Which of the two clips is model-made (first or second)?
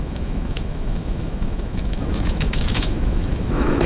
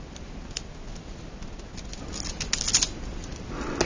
first